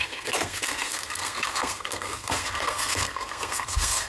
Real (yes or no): no